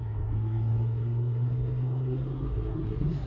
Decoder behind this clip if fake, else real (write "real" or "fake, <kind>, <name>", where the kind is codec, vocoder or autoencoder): fake, codec, SNAC